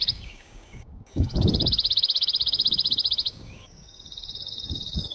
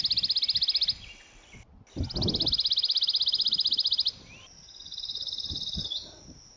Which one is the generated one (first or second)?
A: first